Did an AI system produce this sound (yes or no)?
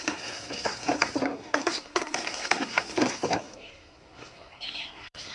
yes